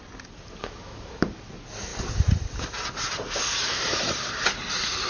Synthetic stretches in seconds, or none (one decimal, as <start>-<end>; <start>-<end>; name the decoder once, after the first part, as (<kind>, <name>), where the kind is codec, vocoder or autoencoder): 0.6-1.2 (autoencoder, DAC-VAE)